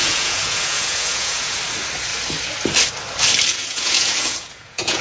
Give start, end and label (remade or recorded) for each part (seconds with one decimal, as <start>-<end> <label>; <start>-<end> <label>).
0.0-1.6 remade; 1.6-3.5 recorded; 3.5-5.0 remade